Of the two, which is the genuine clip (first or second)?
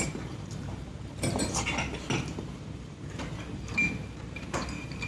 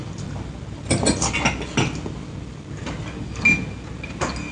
second